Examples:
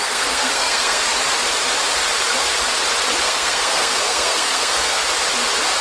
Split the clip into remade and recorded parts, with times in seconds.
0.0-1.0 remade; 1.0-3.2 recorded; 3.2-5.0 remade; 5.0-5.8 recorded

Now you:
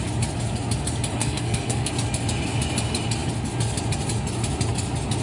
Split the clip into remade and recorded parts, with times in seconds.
0.0-1.2 recorded; 1.2-1.9 remade; 1.9-5.2 recorded

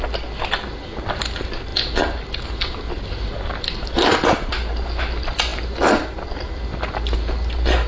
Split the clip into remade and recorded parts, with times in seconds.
0.0-7.9 recorded

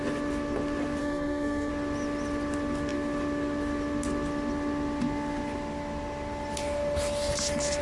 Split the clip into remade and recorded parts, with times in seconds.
0.0-1.0 recorded; 1.0-1.7 remade; 1.7-7.8 recorded